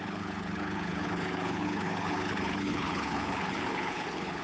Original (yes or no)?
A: no